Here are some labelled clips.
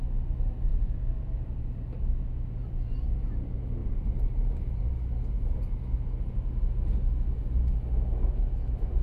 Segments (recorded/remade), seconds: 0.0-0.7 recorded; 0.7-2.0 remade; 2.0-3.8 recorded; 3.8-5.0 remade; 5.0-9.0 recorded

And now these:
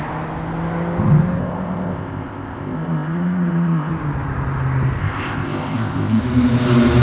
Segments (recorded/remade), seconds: 0.0-1.4 recorded; 1.4-3.9 remade; 3.9-5.0 recorded; 5.0-6.2 remade; 6.2-7.0 recorded

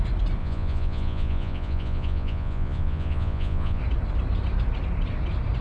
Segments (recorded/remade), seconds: 0.0-0.4 recorded; 0.4-3.8 remade; 3.8-5.6 recorded

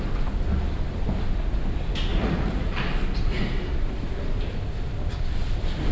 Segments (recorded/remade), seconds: 0.0-2.1 recorded; 2.1-2.7 remade; 2.7-5.9 recorded

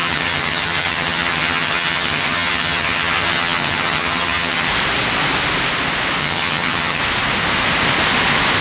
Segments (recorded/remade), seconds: 0.0-4.7 remade; 4.7-6.2 recorded; 6.2-7.0 remade; 7.0-8.6 recorded